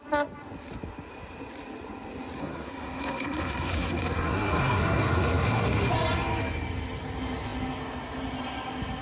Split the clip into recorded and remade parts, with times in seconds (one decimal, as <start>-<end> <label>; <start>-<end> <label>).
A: 0.0-2.4 recorded; 2.4-5.9 remade; 5.9-9.0 recorded